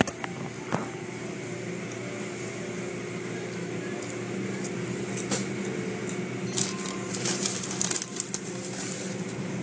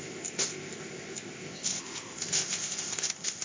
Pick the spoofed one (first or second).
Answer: second